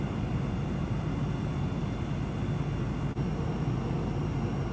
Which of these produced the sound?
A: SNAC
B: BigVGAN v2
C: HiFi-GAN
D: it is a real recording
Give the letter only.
D